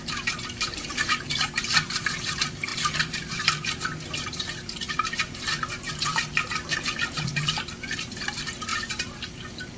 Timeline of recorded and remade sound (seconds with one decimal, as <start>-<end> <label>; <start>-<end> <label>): 0.0-9.8 remade